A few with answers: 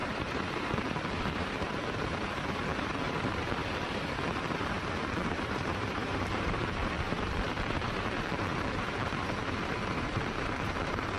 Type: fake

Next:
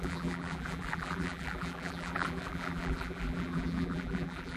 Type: fake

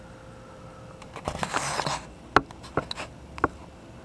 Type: real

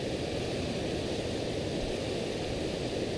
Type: real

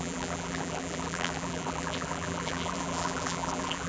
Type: fake